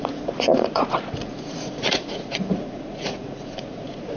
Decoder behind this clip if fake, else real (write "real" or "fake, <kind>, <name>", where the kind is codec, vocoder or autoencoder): fake, vocoder, Vocos